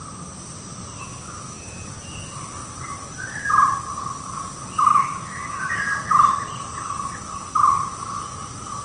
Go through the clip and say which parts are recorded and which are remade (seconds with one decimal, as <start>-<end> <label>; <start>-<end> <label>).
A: 0.0-1.1 recorded; 1.1-1.6 remade; 1.6-4.9 recorded; 4.9-5.7 remade; 5.7-8.8 recorded